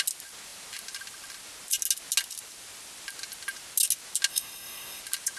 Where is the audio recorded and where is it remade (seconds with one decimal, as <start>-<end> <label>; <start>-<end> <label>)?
0.0-4.3 recorded; 4.3-5.0 remade; 5.0-5.4 recorded